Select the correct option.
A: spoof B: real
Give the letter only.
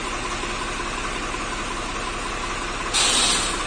B